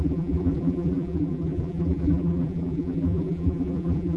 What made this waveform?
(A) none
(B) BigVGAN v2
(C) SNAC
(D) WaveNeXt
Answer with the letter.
B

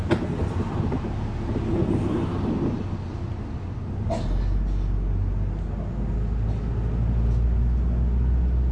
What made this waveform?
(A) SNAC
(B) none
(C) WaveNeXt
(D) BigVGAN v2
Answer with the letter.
B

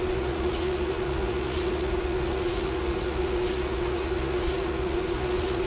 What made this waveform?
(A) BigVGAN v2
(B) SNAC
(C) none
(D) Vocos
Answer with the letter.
D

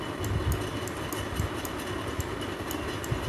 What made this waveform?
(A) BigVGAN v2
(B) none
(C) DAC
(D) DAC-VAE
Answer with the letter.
B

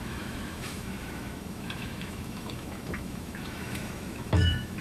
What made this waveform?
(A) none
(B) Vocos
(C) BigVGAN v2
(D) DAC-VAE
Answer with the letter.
D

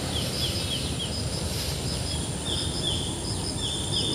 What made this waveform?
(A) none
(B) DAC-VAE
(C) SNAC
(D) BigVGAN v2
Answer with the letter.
A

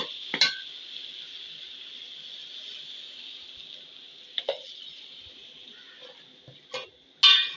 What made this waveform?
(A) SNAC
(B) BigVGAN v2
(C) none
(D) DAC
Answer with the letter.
C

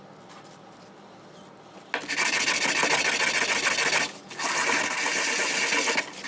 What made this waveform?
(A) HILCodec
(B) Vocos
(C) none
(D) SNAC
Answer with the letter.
C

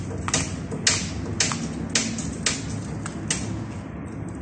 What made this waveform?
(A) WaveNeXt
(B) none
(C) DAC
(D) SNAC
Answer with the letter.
B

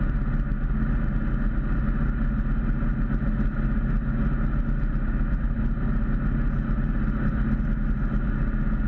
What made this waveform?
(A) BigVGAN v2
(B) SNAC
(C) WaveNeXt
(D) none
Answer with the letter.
D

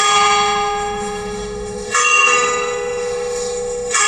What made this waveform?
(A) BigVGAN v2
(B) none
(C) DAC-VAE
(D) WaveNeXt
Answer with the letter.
C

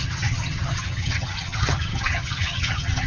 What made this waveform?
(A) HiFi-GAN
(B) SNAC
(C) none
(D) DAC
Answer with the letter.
A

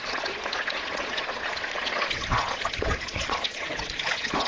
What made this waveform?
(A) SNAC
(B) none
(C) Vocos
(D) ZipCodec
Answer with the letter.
C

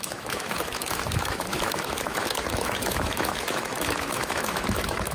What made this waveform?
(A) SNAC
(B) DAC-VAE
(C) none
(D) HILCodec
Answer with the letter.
B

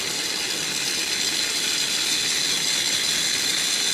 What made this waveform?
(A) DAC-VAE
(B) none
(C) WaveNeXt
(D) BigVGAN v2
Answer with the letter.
B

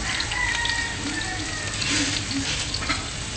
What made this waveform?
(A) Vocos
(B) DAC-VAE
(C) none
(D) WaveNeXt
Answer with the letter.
C